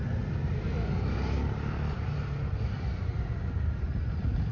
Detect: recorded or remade recorded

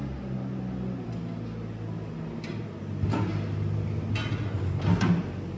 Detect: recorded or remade recorded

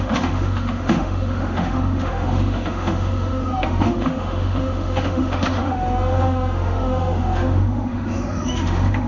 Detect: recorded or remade remade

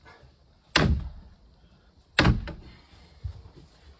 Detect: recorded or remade recorded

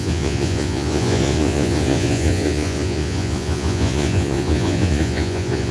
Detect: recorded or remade remade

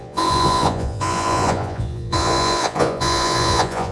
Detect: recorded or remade remade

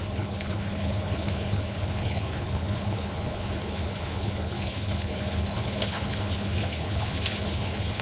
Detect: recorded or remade remade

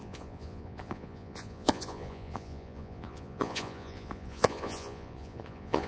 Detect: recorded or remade remade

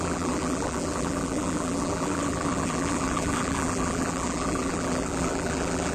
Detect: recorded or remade remade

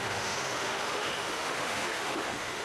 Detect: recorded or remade remade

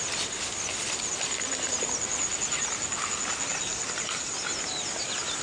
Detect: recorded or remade recorded